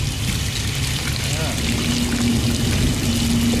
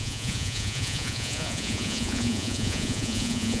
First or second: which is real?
first